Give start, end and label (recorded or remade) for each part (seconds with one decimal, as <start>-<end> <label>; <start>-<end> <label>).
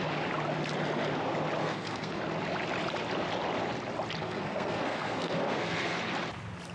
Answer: 0.0-1.6 recorded; 1.6-2.2 remade; 2.2-4.2 recorded; 4.2-6.0 remade; 6.0-6.7 recorded